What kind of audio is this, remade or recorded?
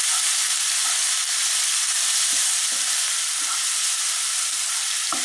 recorded